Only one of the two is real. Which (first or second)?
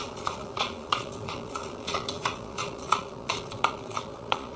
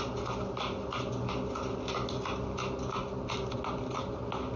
second